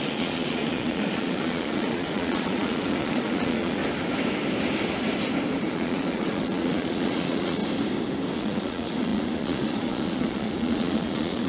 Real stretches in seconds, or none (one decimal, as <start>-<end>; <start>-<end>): 3.8-5.7; 7.6-8.3